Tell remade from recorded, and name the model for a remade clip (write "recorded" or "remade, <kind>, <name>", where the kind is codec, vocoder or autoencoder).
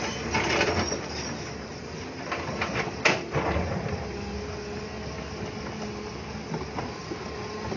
recorded